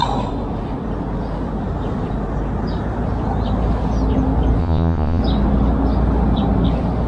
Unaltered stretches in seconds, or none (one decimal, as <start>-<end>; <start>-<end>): 0.0-4.6; 5.2-7.1